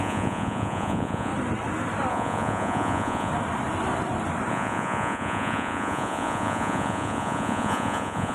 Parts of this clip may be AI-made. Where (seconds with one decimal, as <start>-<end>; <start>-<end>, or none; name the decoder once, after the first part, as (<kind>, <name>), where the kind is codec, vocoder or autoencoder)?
0.0-1.3 (vocoder, Vocos); 2.1-3.3; 4.5-8.3